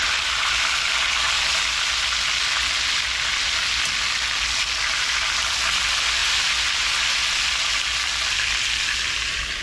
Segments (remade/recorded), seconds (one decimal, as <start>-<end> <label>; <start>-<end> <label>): 0.0-9.6 recorded